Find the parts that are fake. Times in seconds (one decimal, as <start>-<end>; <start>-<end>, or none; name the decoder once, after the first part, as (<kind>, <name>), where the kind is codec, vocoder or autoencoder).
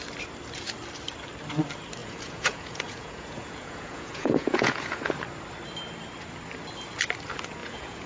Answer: 2.0-5.0 (vocoder, Vocos); 7.6-8.1